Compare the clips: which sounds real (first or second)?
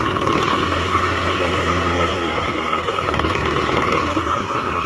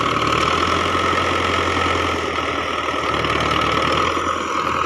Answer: second